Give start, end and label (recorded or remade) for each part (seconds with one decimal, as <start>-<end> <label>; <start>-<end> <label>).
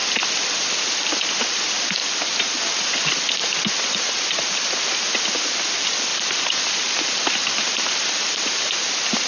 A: 0.0-2.0 recorded; 2.0-2.6 remade; 2.6-6.1 recorded; 6.1-8.7 remade; 8.7-9.3 recorded